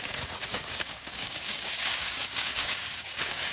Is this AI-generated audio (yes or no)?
yes